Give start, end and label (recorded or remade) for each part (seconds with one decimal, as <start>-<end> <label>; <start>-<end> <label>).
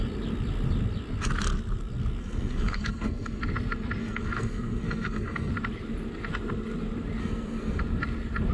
0.0-2.2 recorded; 2.2-3.4 remade; 3.4-4.0 recorded; 4.0-5.5 remade; 5.5-7.2 recorded; 7.2-7.8 remade; 7.8-8.5 recorded